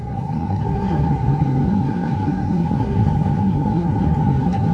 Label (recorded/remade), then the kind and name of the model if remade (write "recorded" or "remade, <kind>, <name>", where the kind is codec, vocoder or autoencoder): remade, codec, SNAC